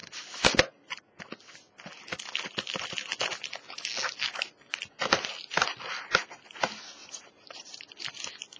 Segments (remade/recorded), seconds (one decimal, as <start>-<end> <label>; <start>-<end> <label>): 0.0-7.0 recorded; 7.0-7.8 remade; 7.8-8.6 recorded